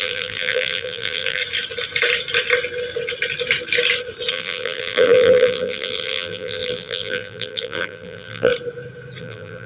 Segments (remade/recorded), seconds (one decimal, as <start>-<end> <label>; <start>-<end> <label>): 0.0-1.4 remade; 1.4-4.3 recorded; 4.3-8.5 remade; 8.5-9.2 recorded; 9.2-9.7 remade